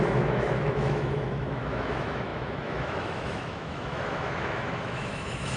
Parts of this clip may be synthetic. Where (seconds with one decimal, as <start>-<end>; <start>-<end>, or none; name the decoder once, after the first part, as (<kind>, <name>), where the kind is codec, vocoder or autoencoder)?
0.0-5.6 (autoencoder, DAC-VAE)